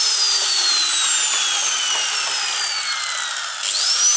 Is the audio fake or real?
real